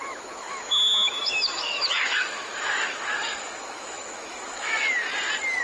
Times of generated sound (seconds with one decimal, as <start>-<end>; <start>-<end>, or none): 0.0-5.0